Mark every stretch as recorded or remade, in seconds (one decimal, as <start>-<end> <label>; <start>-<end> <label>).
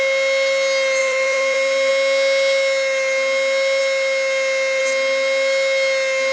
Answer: 0.0-1.0 recorded; 1.0-1.9 remade; 1.9-6.3 recorded